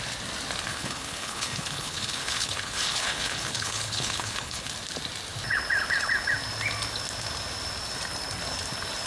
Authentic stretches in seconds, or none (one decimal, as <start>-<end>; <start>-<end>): 0.0-0.7; 4.7-9.1